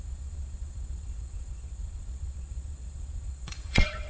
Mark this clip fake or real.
fake